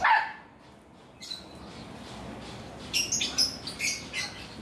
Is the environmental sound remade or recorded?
recorded